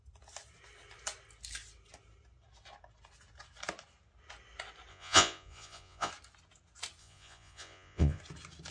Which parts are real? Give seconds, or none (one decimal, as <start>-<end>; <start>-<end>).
0.0-4.9; 6.1-7.0; 8.2-8.7